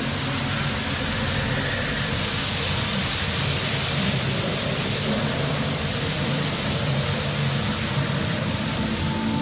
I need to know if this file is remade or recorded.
recorded